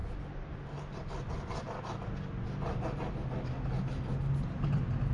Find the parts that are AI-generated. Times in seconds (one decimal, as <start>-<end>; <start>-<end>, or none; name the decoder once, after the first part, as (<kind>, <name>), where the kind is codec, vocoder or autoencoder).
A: none